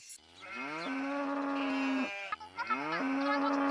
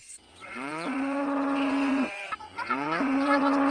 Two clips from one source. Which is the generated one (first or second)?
second